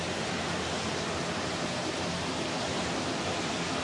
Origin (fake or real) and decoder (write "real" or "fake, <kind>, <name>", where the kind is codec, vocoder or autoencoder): fake, vocoder, BigVGAN v2